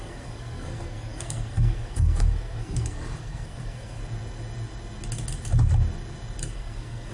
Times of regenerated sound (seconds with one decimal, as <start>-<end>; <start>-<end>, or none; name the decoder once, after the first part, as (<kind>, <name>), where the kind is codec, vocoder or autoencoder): 0.0-4.0 (codec, SNAC); 6.4-7.1